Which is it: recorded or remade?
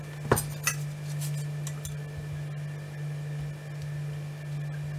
recorded